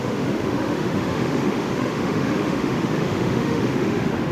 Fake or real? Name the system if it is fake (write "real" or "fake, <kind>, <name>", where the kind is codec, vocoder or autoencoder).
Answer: fake, autoencoder, DAC-VAE